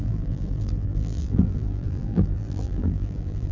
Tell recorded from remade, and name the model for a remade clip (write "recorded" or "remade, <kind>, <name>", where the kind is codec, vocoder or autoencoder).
remade, vocoder, BigVGAN v2